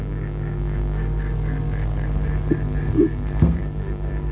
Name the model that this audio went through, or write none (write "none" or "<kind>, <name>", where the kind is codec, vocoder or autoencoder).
codec, SNAC